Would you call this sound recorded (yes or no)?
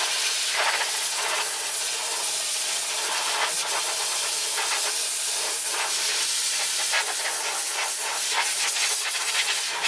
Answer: yes